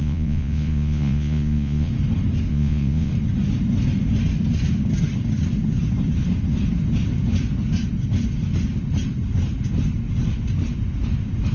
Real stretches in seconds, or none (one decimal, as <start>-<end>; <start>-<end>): 1.9-2.5; 3.1-11.5